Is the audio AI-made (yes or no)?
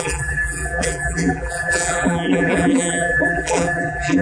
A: yes